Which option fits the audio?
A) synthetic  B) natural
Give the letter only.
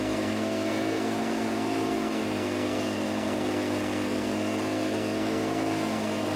A